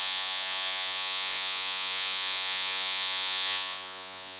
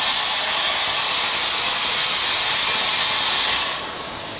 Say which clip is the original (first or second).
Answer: second